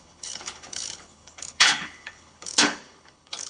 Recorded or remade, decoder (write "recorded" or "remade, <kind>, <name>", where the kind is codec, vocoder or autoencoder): remade, codec, HILCodec